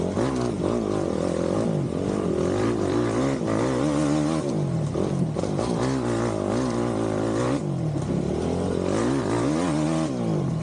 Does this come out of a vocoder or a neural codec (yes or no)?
no